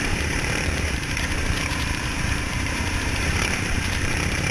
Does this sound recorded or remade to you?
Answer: remade